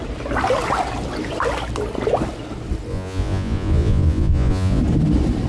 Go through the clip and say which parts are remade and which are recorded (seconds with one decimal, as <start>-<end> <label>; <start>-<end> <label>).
0.0-2.9 recorded; 2.9-4.8 remade; 4.8-5.5 recorded